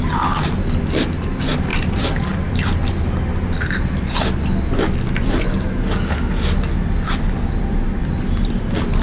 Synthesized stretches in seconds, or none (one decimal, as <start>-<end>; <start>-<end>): 1.7-3.0; 8.0-8.6